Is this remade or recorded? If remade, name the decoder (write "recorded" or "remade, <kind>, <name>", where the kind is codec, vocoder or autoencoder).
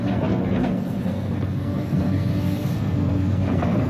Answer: remade, codec, SNAC